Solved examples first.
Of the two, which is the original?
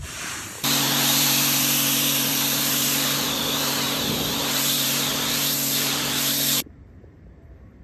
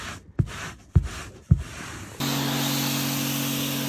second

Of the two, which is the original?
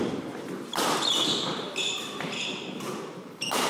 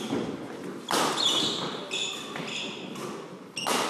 second